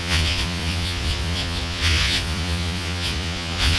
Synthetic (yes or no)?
yes